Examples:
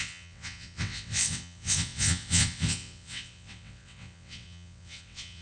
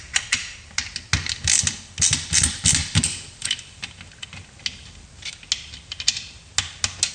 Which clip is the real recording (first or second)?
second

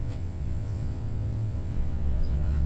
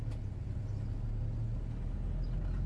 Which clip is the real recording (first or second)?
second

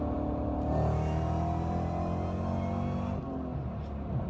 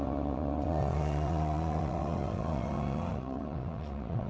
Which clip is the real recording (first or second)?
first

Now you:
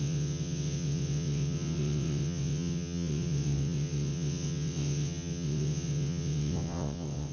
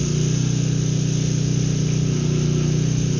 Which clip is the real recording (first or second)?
second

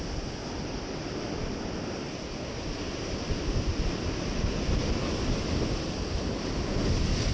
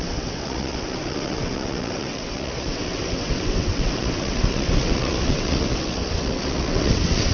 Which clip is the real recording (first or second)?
first